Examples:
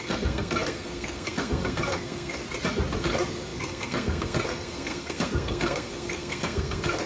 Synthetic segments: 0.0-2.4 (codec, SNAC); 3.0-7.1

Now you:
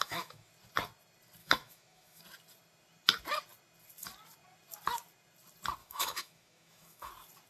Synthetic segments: 0.0-0.5 (autoencoder, DAC-VAE); 1.4-2.2; 5.8-7.1

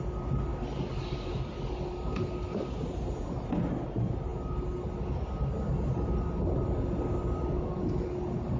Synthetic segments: none